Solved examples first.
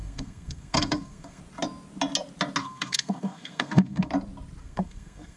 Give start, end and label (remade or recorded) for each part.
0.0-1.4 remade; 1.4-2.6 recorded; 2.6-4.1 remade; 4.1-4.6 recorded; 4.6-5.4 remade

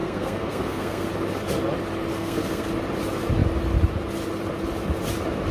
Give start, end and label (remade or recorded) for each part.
0.0-1.1 remade; 1.1-2.1 recorded; 2.1-2.7 remade; 2.7-5.5 recorded

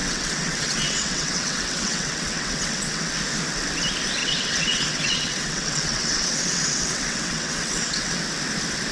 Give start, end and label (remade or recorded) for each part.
0.0-3.1 remade; 3.1-4.2 recorded; 4.2-8.2 remade; 8.2-8.9 recorded

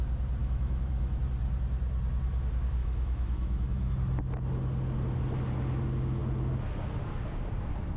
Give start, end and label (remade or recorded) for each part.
0.0-0.4 recorded; 0.4-1.2 remade; 1.2-2.8 recorded; 2.8-3.9 remade; 3.9-8.0 recorded

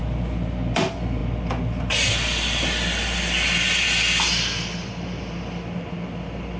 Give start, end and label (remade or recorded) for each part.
0.0-6.6 recorded